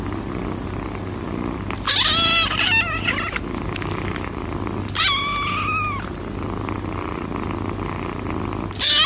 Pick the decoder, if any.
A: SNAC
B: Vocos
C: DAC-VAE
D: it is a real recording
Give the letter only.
D